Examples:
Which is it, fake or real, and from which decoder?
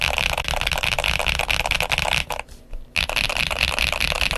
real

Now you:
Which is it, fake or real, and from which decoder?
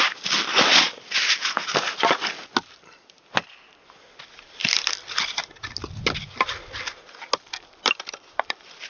real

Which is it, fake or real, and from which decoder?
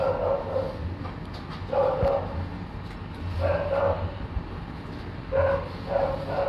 real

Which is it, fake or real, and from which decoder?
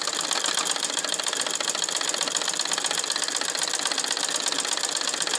real